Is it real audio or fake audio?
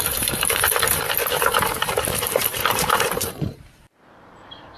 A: fake